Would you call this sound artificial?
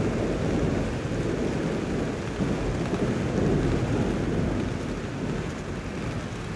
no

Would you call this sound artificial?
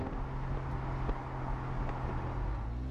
no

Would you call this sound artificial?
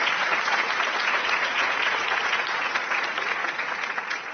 yes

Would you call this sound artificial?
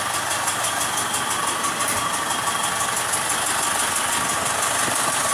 no